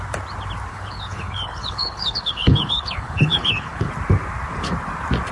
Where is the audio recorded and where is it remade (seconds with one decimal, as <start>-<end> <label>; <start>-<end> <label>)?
0.0-0.7 recorded; 0.7-3.9 remade; 3.9-5.3 recorded

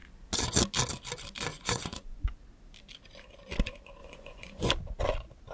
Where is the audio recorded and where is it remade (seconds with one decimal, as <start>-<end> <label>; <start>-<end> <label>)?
0.0-1.5 recorded; 1.5-2.2 remade; 2.2-4.0 recorded; 4.0-4.7 remade; 4.7-5.5 recorded

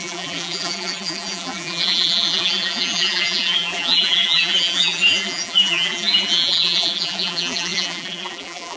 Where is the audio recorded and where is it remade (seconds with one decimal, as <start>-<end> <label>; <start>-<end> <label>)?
0.0-8.8 remade

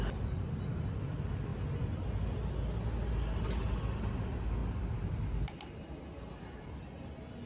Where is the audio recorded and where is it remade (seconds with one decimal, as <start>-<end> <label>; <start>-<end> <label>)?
0.0-7.5 recorded

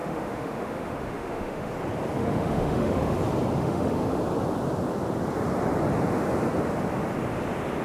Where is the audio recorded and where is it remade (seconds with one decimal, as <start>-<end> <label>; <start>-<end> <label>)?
0.0-1.7 remade; 1.7-2.2 recorded; 2.2-3.2 remade; 3.2-3.6 recorded; 3.6-4.2 remade; 4.2-7.8 recorded

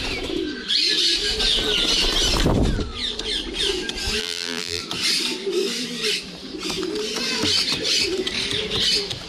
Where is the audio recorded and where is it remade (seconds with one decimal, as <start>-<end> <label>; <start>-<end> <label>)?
0.0-4.2 recorded; 4.2-4.8 remade; 4.8-9.3 recorded

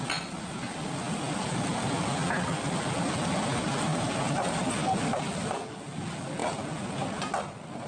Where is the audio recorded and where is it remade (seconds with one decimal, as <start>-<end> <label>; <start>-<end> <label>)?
0.0-7.9 recorded